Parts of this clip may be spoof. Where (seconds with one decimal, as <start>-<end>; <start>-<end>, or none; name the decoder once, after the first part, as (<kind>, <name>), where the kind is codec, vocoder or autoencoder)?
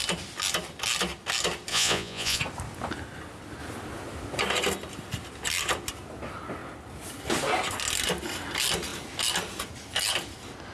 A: 1.7-2.4 (vocoder, Vocos)